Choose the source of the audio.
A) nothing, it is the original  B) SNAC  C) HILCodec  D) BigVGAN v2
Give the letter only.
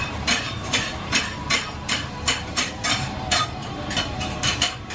D